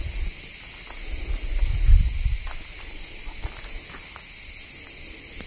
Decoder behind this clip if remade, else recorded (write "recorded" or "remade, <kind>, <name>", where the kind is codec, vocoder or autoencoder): recorded